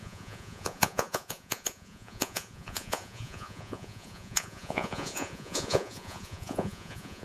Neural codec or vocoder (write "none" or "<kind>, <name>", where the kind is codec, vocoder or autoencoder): vocoder, Vocos